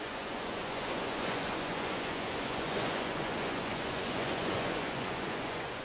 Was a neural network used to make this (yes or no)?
yes